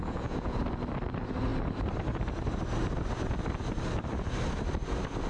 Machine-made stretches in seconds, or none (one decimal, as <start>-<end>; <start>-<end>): 0.0-0.6